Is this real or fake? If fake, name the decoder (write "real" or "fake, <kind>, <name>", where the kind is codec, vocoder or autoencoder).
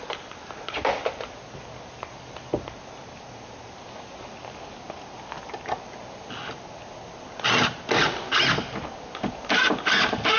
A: real